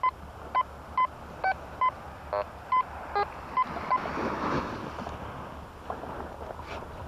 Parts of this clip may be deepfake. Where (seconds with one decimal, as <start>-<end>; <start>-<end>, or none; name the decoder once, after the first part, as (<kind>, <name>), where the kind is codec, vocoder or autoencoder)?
4.2-4.7 (autoencoder, DAC-VAE)